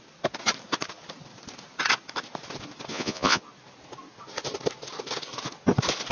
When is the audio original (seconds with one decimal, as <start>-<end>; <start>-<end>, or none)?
0.0-2.9; 3.4-6.1